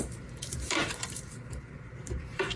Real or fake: fake